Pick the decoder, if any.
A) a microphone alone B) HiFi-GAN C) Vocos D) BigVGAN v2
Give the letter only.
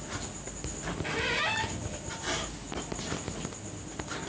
A